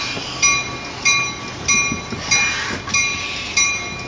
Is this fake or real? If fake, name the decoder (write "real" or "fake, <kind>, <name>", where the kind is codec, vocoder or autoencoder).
real